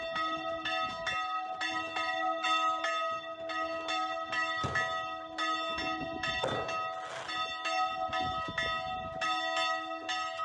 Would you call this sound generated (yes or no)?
no